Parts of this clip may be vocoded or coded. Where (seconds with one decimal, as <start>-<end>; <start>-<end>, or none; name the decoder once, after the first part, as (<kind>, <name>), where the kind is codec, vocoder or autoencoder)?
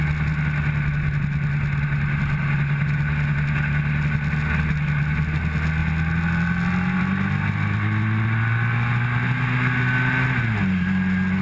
none